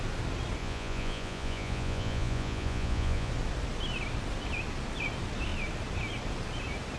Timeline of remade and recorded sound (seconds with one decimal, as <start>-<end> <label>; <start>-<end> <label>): 0.0-0.6 recorded; 0.6-3.3 remade; 3.3-7.0 recorded